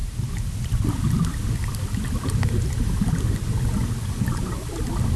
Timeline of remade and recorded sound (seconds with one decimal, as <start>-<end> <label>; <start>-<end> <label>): 0.0-5.2 recorded